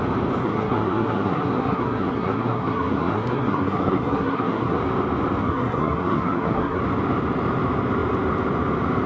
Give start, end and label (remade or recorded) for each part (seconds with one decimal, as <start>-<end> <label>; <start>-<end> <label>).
0.0-0.4 recorded; 0.4-4.8 remade; 4.8-5.4 recorded; 5.4-6.8 remade; 6.8-9.1 recorded